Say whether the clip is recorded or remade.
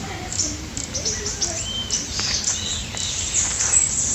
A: recorded